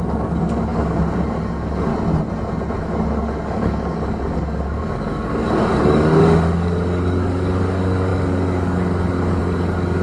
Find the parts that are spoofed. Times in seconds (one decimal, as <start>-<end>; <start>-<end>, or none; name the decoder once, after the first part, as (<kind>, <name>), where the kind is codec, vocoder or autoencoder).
0.0-1.9 (codec, DAC); 2.8-10.0